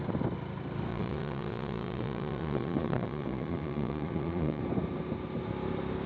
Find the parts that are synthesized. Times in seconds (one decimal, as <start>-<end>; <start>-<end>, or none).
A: 0.9-4.6